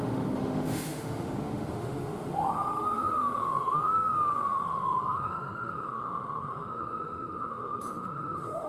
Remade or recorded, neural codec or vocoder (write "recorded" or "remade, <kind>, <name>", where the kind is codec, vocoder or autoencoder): remade, autoencoder, DAC-VAE